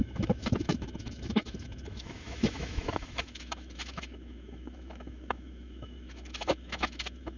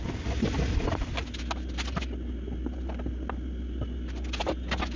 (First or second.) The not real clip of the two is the first